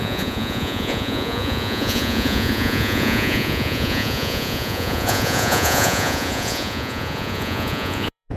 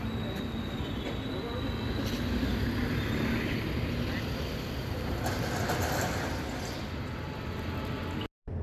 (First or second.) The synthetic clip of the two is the first